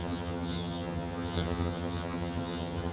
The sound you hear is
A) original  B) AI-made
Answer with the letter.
B